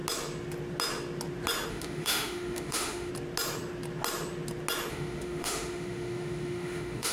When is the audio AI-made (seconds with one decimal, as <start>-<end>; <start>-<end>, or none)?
1.7-3.1; 4.9-7.1